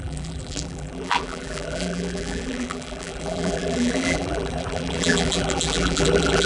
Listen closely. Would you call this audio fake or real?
fake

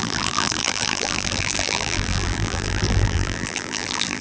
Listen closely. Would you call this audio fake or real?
fake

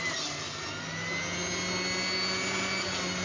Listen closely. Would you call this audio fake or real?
real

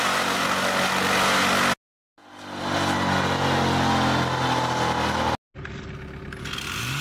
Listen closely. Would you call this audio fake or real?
real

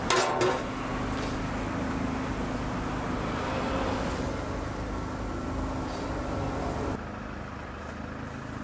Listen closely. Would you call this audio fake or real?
real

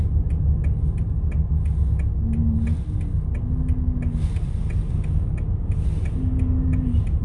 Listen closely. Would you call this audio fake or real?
real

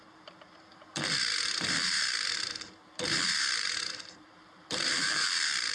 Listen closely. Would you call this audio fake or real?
fake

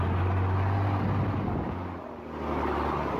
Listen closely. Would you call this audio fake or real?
real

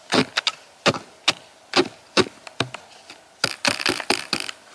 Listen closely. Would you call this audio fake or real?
real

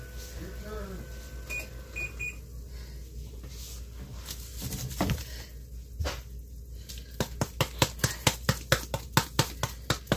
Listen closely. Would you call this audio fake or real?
real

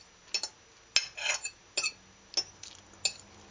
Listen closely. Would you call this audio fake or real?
real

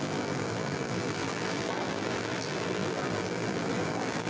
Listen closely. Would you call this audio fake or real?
fake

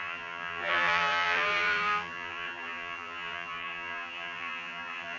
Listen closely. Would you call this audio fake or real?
fake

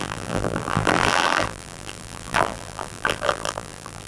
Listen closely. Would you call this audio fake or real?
fake